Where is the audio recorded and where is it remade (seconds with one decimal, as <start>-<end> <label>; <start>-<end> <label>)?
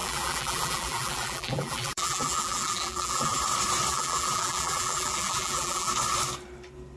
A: 0.0-3.4 remade; 3.4-3.9 recorded; 3.9-5.9 remade; 5.9-7.0 recorded